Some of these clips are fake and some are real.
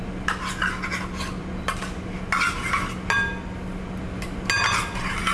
real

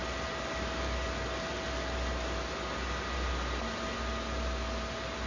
real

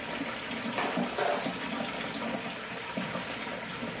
real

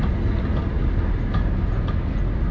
real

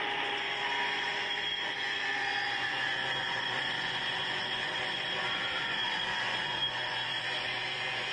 fake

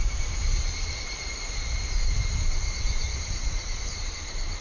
fake